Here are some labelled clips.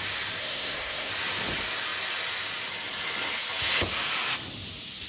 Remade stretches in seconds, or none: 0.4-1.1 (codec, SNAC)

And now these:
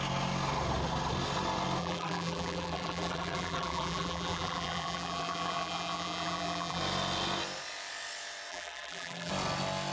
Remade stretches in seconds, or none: 1.8-6.8 (vocoder, BigVGAN v2); 8.5-9.3

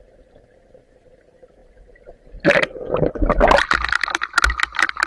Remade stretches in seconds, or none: none